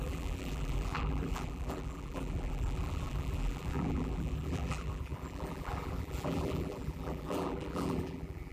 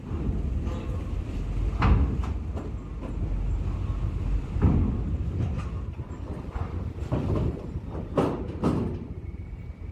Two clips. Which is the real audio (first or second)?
second